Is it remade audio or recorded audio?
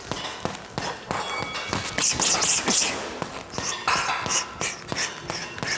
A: recorded